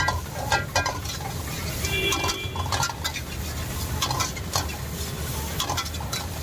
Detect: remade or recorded recorded